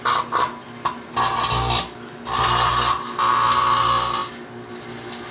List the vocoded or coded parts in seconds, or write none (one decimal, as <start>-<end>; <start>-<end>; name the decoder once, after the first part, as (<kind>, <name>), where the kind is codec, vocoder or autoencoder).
none